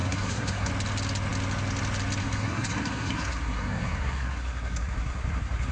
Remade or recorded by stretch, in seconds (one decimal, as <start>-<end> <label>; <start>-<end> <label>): 0.0-0.7 remade; 0.7-2.2 recorded; 2.2-5.7 remade